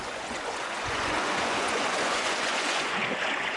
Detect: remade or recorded remade